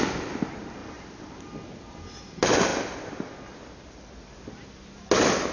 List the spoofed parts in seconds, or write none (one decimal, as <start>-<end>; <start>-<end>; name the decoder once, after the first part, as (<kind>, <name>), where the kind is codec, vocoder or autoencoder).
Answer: 0.8-1.4 (vocoder, BigVGAN v2)